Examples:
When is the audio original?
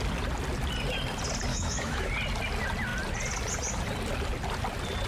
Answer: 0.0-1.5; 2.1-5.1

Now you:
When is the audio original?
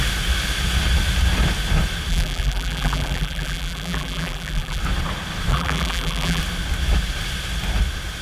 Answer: 0.0-2.1; 4.8-5.5; 6.4-8.2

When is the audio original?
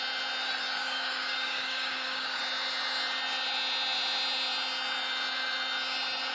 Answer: 0.0-0.8; 2.4-6.3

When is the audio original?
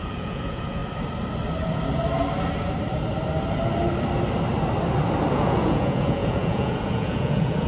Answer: 0.8-5.3